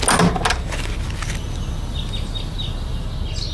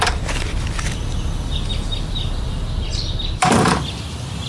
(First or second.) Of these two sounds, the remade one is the second